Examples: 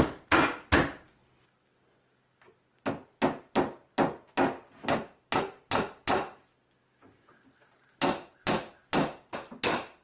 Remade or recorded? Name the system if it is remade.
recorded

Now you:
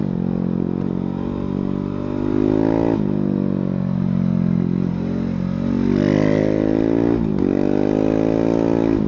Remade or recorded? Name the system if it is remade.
recorded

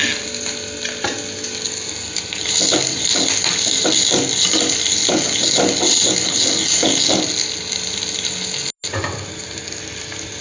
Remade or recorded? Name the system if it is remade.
recorded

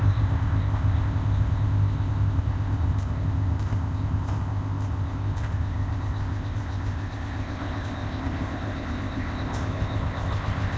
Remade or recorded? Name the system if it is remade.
remade, codec, ZipCodec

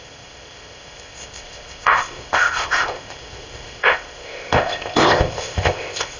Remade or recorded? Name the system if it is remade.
remade, codec, ZipCodec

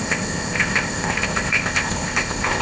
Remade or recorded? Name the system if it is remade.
remade, codec, ZipCodec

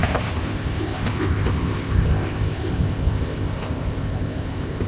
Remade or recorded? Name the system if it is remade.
remade, codec, ZipCodec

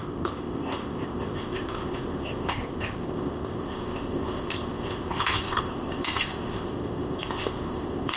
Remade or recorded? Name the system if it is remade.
remade, codec, ZipCodec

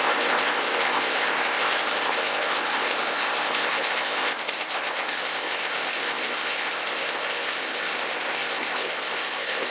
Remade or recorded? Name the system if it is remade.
remade, codec, ZipCodec